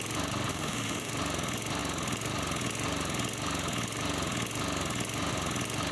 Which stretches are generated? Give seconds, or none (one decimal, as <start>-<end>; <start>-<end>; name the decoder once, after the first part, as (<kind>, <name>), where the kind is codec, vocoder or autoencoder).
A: 0.5-1.1 (autoencoder, DAC-VAE)